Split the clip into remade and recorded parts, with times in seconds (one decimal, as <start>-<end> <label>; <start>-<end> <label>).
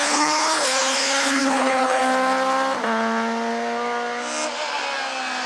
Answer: 0.0-2.0 remade; 2.0-5.5 recorded